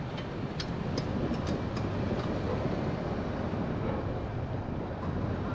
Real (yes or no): yes